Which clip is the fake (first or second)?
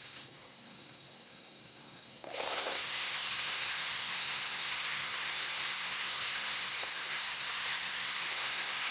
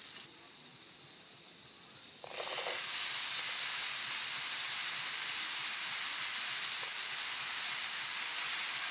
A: first